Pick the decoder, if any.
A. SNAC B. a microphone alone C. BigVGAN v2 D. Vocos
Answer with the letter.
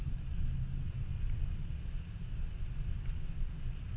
B